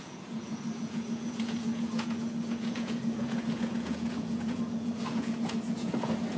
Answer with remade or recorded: remade